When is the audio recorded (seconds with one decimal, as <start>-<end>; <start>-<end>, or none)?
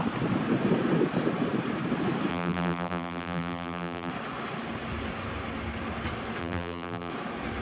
0.0-2.3; 4.1-6.4; 7.1-7.6